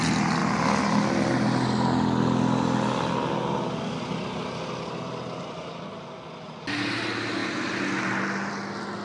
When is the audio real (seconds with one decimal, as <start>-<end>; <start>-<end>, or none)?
0.0-9.0